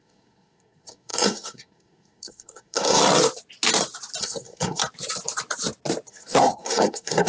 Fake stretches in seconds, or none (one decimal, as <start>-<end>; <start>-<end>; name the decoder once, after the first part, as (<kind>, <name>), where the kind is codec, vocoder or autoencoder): 0.0-3.0 (codec, SNAC); 4.2-4.8; 6.1-7.3